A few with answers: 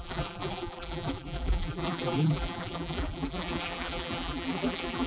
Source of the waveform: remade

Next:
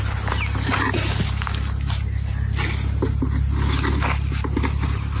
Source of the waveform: recorded